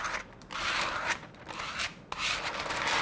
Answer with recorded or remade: recorded